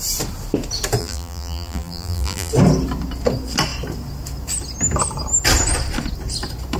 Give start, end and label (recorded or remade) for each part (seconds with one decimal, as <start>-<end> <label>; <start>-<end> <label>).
0.0-1.0 recorded; 1.0-2.5 remade; 2.5-6.8 recorded